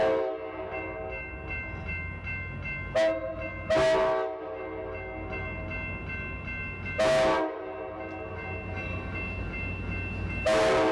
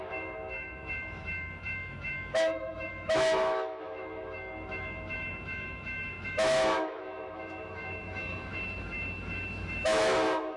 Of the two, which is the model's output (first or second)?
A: second